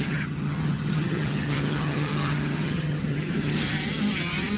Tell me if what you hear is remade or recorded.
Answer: remade